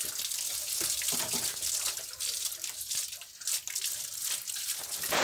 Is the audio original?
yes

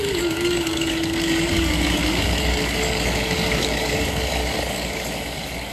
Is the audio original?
no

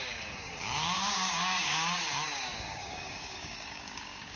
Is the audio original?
no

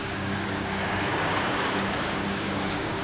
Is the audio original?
no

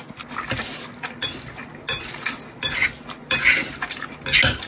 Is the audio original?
yes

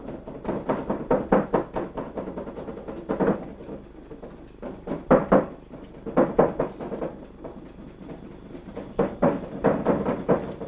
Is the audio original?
yes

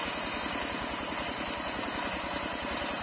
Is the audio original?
yes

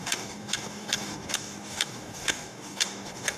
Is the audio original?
no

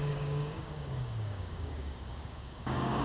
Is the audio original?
no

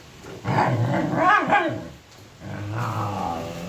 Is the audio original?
yes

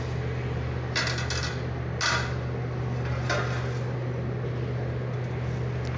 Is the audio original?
yes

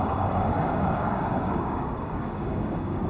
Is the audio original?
no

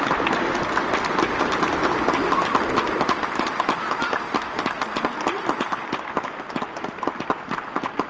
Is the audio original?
yes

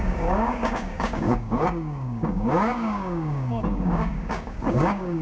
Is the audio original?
no